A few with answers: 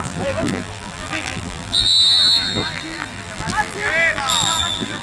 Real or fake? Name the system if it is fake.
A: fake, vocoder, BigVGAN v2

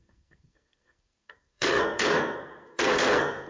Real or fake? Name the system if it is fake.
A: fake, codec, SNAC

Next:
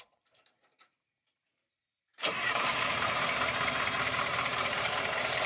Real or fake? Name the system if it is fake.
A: fake, vocoder, BigVGAN v2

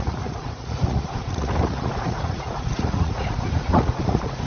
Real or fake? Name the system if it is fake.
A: fake, vocoder, Vocos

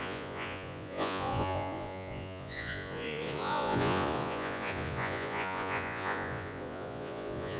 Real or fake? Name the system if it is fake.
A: fake, vocoder, Vocos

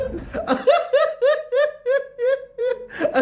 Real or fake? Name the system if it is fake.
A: fake, vocoder, BigVGAN v2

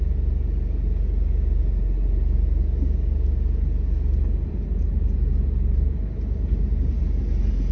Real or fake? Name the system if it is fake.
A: real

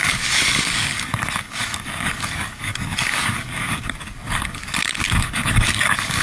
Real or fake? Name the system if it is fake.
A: fake, codec, DAC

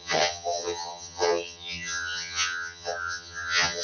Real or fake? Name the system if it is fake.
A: fake, vocoder, HiFi-GAN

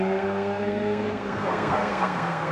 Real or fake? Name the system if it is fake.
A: fake, codec, SNAC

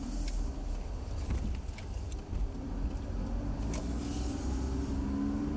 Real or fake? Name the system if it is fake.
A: real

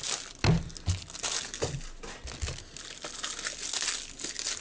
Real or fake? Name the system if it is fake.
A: real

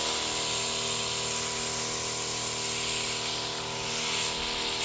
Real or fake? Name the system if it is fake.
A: real